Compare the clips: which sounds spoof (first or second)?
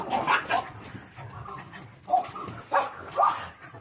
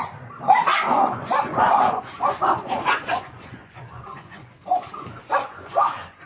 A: second